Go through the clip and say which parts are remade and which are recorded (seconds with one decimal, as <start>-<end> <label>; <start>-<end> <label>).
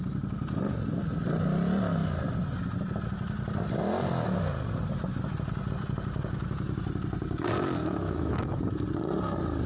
0.0-7.8 recorded; 7.8-8.6 remade; 8.6-9.7 recorded